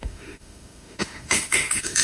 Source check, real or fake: fake